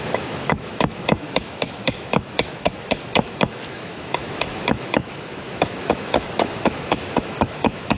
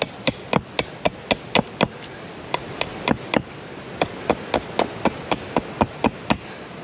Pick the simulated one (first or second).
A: first